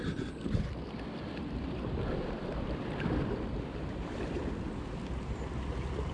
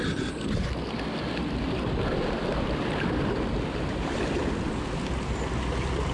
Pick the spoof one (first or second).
first